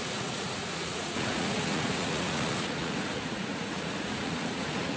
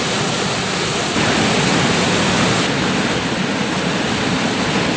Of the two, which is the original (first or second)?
second